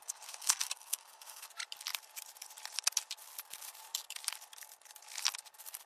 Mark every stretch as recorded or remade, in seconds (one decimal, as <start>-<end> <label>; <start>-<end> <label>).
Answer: 0.0-1.5 remade; 1.5-5.9 recorded